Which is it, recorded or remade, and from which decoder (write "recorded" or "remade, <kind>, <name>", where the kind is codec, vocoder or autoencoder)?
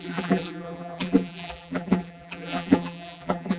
remade, vocoder, BigVGAN v2